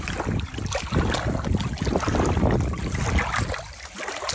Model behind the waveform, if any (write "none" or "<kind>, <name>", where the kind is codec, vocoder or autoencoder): none